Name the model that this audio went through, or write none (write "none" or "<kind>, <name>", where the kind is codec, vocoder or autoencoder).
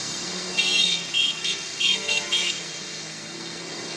codec, SNAC